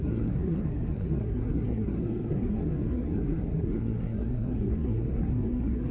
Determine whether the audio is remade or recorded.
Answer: remade